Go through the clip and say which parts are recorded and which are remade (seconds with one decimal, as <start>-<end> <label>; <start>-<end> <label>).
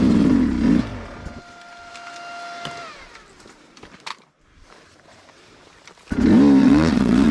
0.0-6.6 recorded; 6.6-7.3 remade